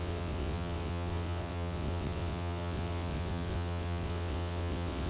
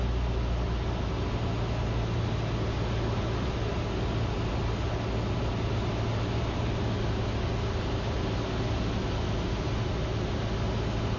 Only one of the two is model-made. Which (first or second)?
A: first